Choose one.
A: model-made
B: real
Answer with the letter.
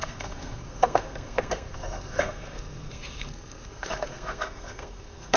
A